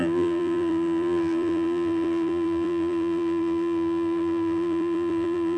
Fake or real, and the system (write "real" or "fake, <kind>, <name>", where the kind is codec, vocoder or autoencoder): fake, vocoder, BigVGAN v2